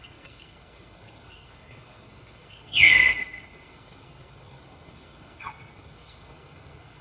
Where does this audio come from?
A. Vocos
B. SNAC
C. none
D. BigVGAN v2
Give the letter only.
B